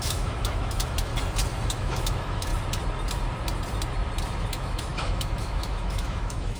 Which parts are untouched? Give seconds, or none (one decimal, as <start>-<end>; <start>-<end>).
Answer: 1.1-1.7; 2.5-4.4